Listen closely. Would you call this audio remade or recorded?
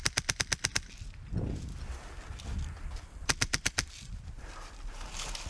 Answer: remade